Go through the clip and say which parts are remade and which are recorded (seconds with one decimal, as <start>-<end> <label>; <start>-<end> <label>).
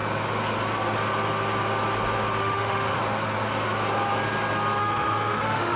0.0-2.4 recorded; 2.4-3.0 remade; 3.0-4.8 recorded; 4.8-5.8 remade